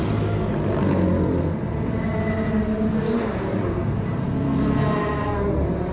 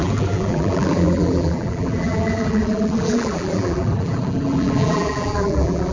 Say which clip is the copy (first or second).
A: second